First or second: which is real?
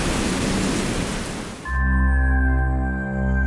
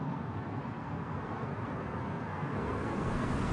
first